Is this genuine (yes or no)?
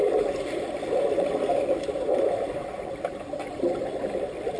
no